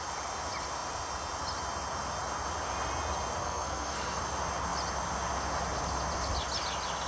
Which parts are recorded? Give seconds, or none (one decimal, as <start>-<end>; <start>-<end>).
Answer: 0.0-3.4; 4.2-7.1